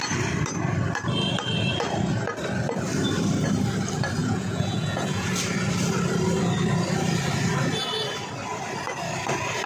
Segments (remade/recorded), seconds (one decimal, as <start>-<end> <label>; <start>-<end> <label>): 0.0-4.2 recorded; 4.2-5.3 remade; 5.3-9.7 recorded